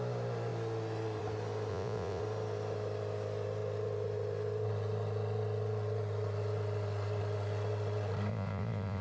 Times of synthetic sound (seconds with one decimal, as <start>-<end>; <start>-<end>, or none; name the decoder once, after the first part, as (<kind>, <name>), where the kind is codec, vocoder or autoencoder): 1.7-2.2 (vocoder, Vocos); 8.3-9.0